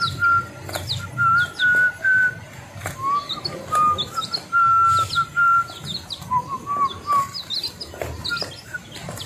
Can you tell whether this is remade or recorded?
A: recorded